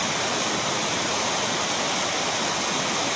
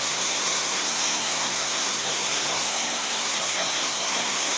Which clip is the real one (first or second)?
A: first